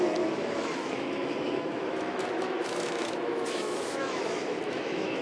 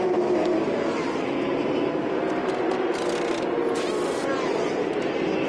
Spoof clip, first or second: first